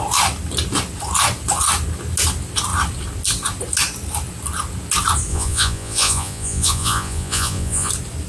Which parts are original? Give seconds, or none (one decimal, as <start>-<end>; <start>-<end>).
0.0-5.3; 7.9-8.3

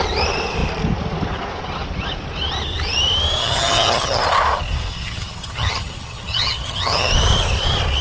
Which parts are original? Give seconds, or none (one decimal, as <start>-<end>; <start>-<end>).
0.0-3.4; 4.2-4.9; 7.1-8.0

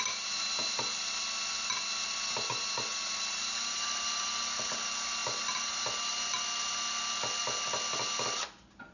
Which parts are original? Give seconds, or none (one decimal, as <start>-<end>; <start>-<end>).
0.0-2.9; 4.6-8.9

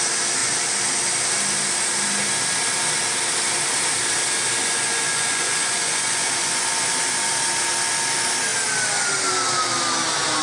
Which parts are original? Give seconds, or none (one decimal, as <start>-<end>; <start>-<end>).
0.0-4.6; 7.0-10.4

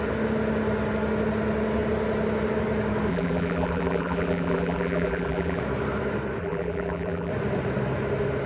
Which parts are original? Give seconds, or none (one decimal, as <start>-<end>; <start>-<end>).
0.0-3.1; 5.6-6.4; 7.3-8.5